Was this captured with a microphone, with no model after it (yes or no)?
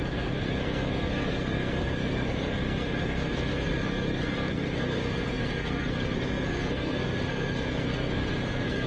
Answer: no